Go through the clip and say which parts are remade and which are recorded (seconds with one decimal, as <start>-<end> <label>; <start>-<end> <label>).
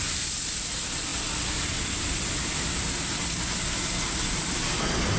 0.0-5.2 recorded